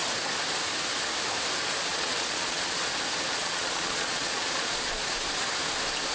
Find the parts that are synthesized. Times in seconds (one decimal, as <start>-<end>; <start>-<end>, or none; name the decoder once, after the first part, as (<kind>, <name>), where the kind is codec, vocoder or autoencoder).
1.9-2.8 (vocoder, Vocos); 3.4-5.0